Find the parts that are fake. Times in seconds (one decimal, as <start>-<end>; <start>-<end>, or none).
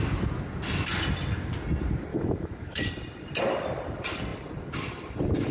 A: 2.1-2.9